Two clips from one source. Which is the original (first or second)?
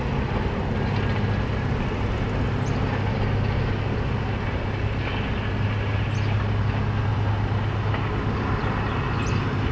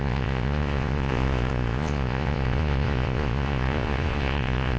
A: first